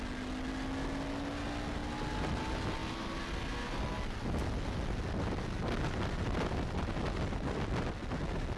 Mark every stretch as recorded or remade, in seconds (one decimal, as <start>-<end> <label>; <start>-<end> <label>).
0.0-8.6 recorded